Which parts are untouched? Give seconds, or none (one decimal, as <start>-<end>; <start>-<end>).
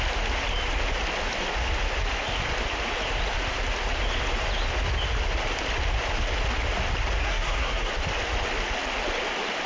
0.0-7.2; 7.9-9.7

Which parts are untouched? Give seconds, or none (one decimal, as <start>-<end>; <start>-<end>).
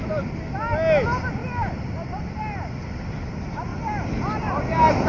0.0-5.1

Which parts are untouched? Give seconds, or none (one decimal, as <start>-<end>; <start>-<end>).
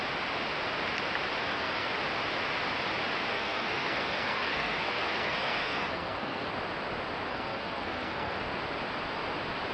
0.0-1.4; 1.9-3.3; 6.5-7.3; 8.5-9.7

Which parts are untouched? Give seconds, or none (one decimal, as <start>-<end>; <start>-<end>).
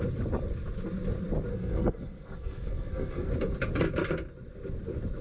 0.0-1.5; 3.3-5.2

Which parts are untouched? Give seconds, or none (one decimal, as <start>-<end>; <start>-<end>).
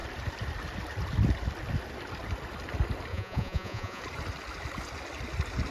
0.0-3.1; 4.0-5.7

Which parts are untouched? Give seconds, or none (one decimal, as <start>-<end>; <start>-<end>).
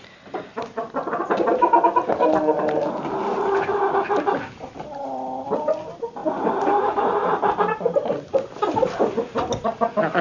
0.0-6.2; 8.1-10.2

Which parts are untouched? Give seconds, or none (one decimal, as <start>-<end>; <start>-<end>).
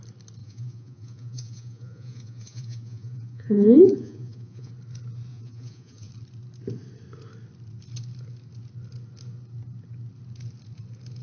0.0-0.4; 4.7-5.3; 6.1-11.2